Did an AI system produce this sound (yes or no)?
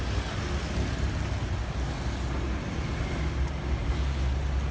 no